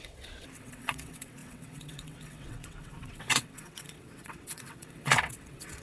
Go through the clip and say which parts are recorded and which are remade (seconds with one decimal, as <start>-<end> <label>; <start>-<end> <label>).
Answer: 0.0-5.8 remade